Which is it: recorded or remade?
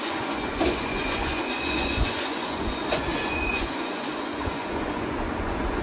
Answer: remade